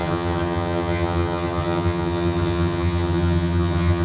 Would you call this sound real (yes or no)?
no